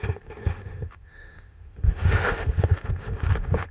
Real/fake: fake